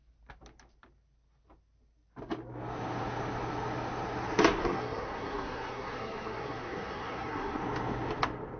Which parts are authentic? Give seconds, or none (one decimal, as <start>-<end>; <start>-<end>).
0.0-4.6; 7.6-8.6